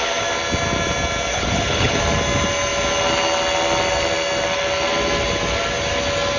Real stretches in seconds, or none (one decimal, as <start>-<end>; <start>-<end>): 0.0-1.3; 1.9-6.4